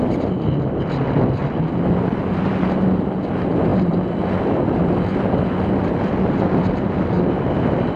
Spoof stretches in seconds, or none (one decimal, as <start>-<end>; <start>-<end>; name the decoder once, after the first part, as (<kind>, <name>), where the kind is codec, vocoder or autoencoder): 0.0-1.4 (vocoder, BigVGAN v2); 3.3-8.0